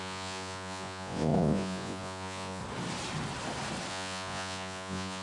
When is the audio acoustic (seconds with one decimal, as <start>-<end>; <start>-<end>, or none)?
2.6-3.9